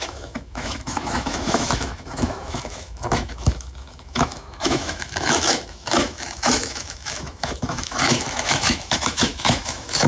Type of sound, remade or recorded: remade